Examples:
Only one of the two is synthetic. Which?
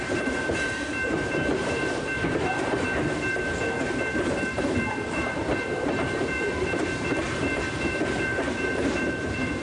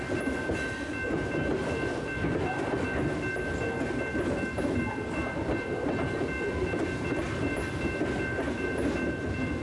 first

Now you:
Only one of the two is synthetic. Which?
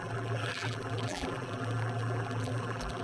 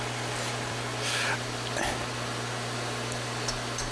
first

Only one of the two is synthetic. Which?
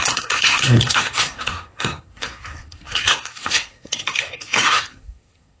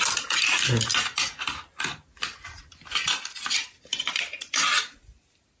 first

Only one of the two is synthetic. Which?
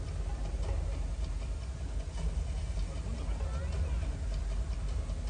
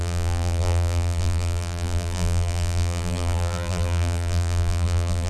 second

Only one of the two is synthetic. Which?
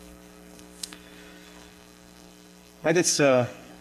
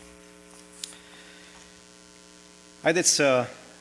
first